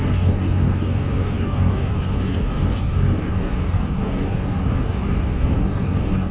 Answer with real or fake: fake